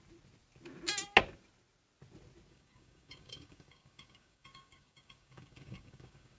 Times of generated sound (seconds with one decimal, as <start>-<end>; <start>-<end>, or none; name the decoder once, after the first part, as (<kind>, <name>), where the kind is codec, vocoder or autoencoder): 2.5-6.4 (codec, DAC)